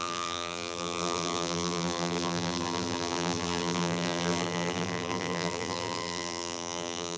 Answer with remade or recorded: remade